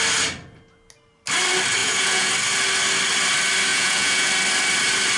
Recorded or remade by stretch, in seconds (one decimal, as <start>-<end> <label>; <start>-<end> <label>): 0.0-1.8 recorded; 1.8-2.3 remade; 2.3-3.7 recorded; 3.7-4.3 remade; 4.3-5.2 recorded

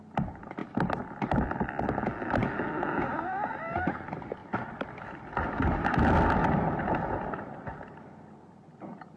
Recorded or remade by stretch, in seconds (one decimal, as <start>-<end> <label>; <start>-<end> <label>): 0.0-9.2 recorded

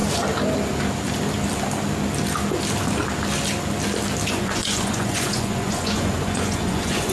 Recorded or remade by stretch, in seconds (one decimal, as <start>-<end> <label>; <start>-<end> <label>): 0.0-4.3 recorded; 4.3-7.1 remade

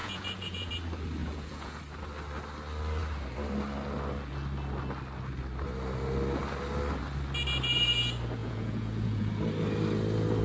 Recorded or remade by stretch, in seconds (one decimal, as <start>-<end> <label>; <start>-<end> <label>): 0.0-0.7 remade; 0.7-1.2 recorded; 1.2-1.8 remade; 1.8-8.4 recorded; 8.4-9.3 remade; 9.3-10.4 recorded

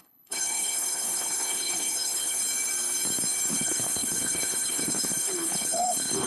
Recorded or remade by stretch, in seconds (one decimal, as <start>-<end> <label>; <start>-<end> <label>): 0.0-2.4 remade; 2.4-3.5 recorded; 3.5-6.3 remade

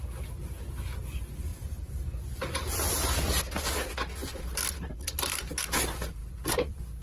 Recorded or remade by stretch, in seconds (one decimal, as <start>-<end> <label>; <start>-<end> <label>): 0.0-1.5 recorded; 1.5-3.4 remade; 3.4-4.2 recorded; 4.2-5.5 remade; 5.5-6.2 recorded; 6.2-7.0 remade

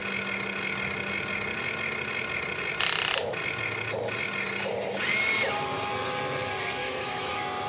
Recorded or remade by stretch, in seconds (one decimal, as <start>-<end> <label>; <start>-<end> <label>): 0.0-6.8 recorded; 6.8-7.3 remade; 7.3-7.7 recorded